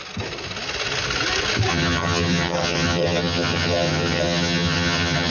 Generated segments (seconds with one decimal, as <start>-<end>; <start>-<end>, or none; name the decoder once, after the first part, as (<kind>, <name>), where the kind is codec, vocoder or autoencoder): 1.7-5.3 (vocoder, HiFi-GAN)